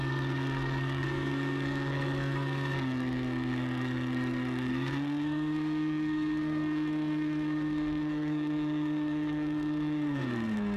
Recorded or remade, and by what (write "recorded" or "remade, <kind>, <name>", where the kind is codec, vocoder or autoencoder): remade, codec, SNAC